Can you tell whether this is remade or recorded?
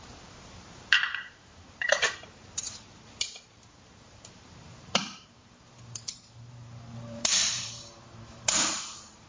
remade